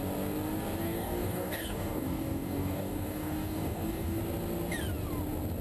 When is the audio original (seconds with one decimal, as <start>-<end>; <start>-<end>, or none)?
0.0-0.8; 4.2-5.6